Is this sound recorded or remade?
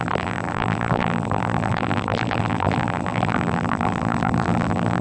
remade